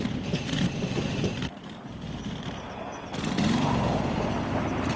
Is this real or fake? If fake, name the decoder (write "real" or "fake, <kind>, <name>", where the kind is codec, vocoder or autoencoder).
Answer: real